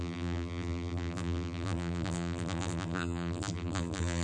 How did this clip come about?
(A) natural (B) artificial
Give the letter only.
B